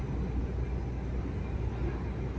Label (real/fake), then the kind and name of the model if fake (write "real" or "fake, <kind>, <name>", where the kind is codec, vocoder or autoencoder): real